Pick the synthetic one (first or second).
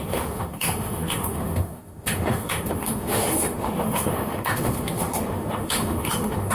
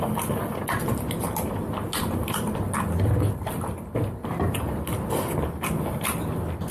first